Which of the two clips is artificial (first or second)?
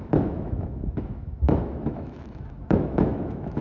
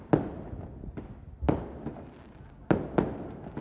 first